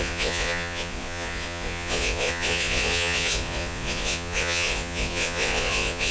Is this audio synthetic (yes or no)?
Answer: yes